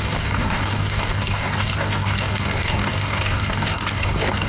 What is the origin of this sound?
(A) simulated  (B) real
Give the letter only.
A